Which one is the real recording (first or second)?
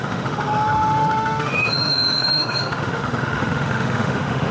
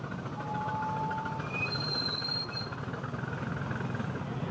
second